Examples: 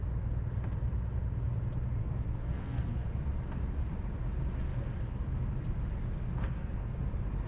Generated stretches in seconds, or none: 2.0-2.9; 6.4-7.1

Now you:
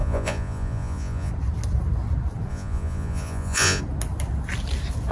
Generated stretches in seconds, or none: 0.0-1.3; 2.5-3.8

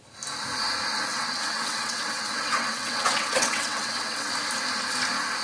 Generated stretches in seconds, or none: 1.1-4.3

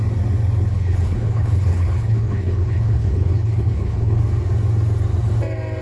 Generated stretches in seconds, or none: 0.7-4.2

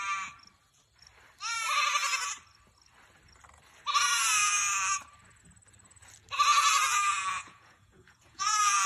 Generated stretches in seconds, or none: 6.5-8.9